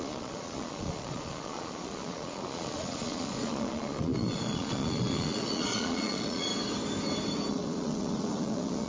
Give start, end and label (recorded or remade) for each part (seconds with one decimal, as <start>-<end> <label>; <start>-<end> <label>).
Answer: 0.0-6.5 remade; 6.5-7.5 recorded; 7.5-8.9 remade